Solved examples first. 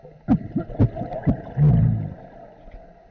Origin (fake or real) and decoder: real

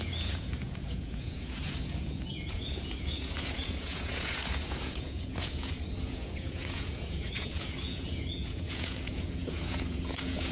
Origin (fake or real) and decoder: fake, vocoder, Vocos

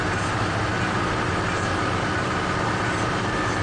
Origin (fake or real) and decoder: real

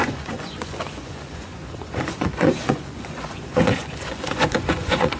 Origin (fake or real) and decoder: fake, vocoder, Vocos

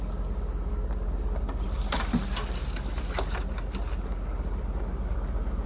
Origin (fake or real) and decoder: real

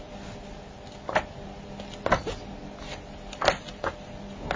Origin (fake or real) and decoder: real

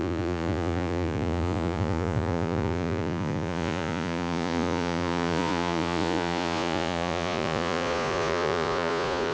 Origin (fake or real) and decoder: fake, vocoder, Vocos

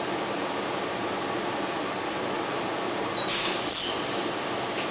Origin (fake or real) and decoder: real